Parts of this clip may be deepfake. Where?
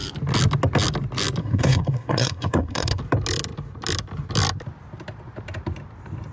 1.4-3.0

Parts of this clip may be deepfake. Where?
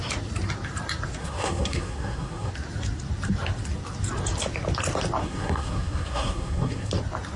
1.2-2.5; 5.2-6.9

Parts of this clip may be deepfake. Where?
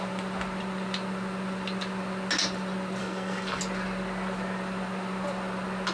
3.0-3.6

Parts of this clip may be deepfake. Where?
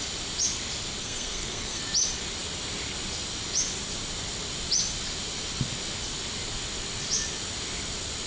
1.0-1.8